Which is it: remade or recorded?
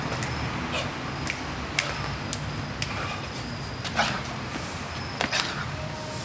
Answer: recorded